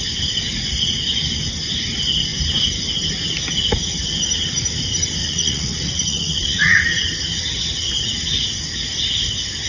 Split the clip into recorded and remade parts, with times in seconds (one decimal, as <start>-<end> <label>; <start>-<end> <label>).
0.0-5.2 recorded; 5.2-7.0 remade; 7.0-9.7 recorded